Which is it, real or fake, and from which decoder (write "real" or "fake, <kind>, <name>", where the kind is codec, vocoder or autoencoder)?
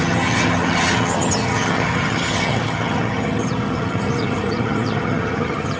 fake, vocoder, HiFi-GAN